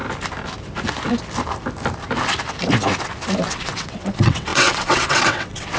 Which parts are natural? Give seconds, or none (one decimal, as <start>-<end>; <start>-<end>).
0.0-3.5